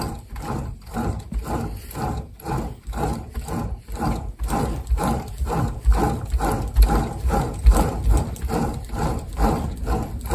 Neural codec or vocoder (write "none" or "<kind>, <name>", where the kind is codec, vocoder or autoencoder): none